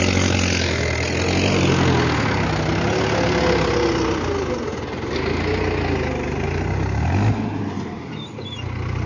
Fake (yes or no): no